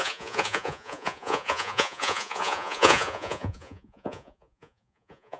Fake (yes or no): yes